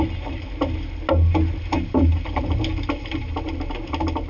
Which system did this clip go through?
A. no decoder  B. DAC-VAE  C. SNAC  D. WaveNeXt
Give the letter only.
A